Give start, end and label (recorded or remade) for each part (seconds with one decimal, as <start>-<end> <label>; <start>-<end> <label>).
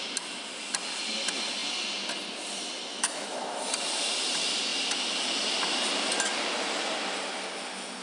0.0-2.9 recorded; 2.9-3.7 remade; 3.7-8.0 recorded